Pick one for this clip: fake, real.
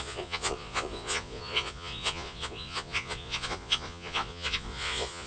fake